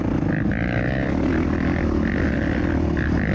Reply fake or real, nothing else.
real